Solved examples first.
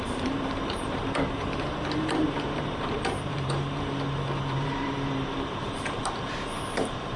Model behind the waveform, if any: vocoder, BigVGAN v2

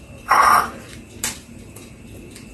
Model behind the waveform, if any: vocoder, BigVGAN v2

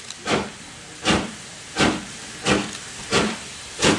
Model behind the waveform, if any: vocoder, BigVGAN v2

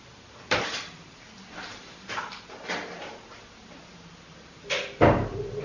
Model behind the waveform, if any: vocoder, BigVGAN v2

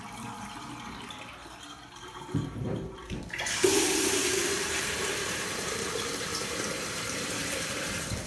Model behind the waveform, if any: vocoder, BigVGAN v2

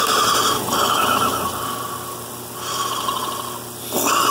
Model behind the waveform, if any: none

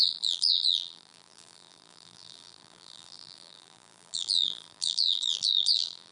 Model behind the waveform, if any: vocoder, BigVGAN v2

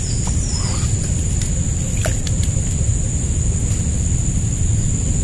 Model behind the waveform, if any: none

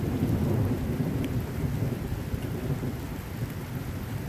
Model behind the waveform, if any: vocoder, BigVGAN v2